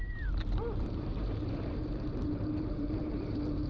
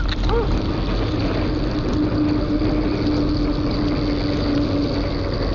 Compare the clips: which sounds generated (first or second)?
first